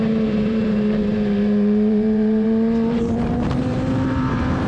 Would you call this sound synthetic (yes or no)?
yes